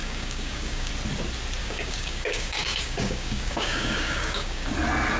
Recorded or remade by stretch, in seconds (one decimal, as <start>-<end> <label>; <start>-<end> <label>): 0.0-0.9 remade; 0.9-1.6 recorded; 1.6-4.7 remade; 4.7-5.2 recorded